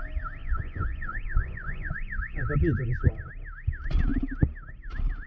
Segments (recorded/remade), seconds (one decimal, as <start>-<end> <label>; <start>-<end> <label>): 0.0-0.4 recorded; 0.4-3.1 remade; 3.1-5.3 recorded